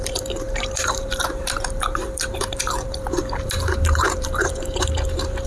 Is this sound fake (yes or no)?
yes